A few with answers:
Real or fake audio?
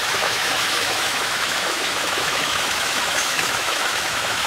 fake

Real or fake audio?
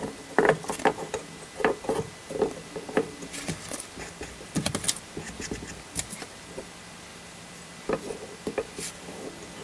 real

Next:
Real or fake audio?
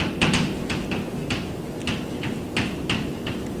real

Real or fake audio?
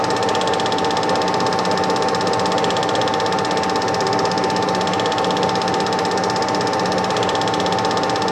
real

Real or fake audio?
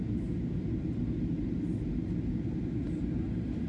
real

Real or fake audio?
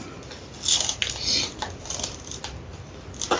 real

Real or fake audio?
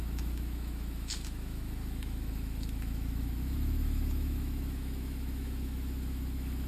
fake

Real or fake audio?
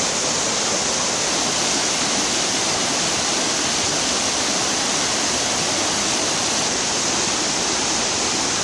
real